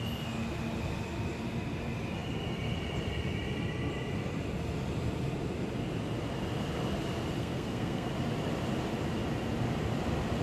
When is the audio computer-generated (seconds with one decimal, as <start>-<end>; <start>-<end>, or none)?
7.4-8.1